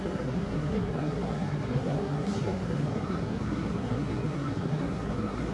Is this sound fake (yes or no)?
yes